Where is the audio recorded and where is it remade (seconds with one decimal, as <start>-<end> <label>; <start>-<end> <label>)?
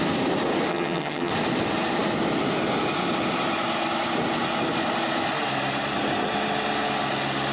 0.0-0.7 recorded; 0.7-1.3 remade; 1.3-7.5 recorded